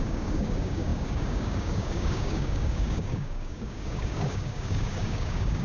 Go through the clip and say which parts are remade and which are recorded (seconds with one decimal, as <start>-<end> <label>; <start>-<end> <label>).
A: 0.0-5.6 remade